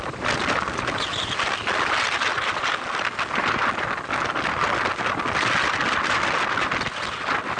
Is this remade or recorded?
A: recorded